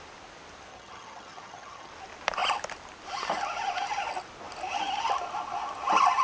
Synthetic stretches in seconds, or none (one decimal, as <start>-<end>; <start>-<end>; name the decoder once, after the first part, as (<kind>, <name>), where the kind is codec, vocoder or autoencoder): 0.7-1.9 (vocoder, HiFi-GAN)